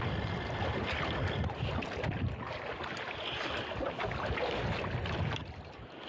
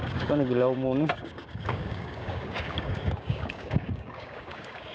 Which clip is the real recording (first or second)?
first